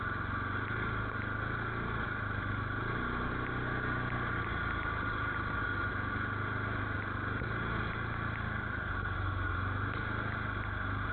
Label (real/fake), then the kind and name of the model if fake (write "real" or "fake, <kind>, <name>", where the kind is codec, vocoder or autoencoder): real